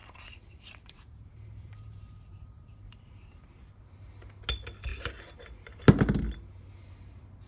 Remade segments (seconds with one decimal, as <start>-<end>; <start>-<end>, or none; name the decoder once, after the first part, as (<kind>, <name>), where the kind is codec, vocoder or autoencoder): 0.0-3.1 (vocoder, BigVGAN v2)